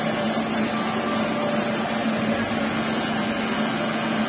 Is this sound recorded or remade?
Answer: recorded